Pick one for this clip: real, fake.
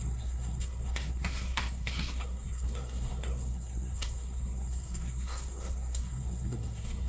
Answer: fake